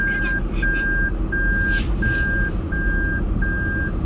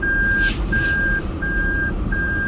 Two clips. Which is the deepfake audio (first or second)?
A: second